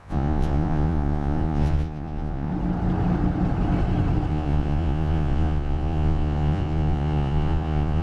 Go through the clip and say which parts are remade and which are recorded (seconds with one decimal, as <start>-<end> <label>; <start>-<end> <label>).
0.0-2.5 remade; 2.5-4.3 recorded; 4.3-8.0 remade

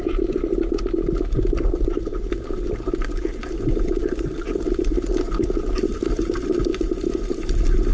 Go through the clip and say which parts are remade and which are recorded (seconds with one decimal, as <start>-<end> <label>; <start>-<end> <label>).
0.0-6.7 recorded; 6.7-7.5 remade; 7.5-7.9 recorded

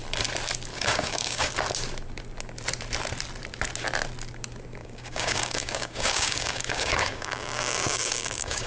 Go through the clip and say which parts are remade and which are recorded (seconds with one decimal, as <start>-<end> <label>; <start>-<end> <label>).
0.0-0.7 recorded; 0.7-1.5 remade; 1.5-4.8 recorded; 4.8-8.7 remade

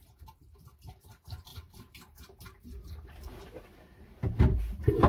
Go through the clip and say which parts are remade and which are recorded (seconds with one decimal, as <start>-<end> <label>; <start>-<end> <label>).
0.0-5.1 remade